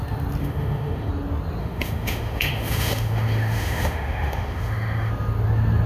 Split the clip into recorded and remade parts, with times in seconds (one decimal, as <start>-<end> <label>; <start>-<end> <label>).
0.0-0.4 recorded; 0.4-1.1 remade; 1.1-1.6 recorded; 1.6-5.1 remade; 5.1-5.9 recorded